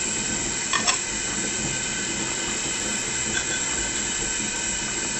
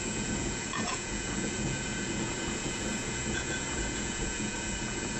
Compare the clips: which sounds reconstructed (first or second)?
second